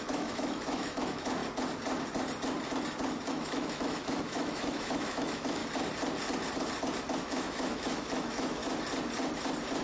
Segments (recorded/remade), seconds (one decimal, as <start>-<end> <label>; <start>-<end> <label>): 0.0-1.4 remade; 1.4-3.3 recorded; 3.3-5.6 remade; 5.6-7.2 recorded; 7.2-8.6 remade; 8.6-9.8 recorded